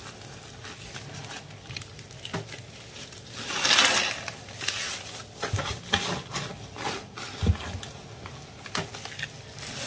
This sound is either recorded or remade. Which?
recorded